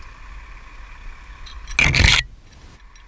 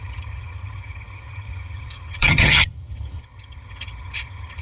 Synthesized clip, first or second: second